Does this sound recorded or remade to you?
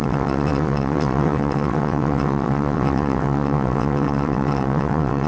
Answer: remade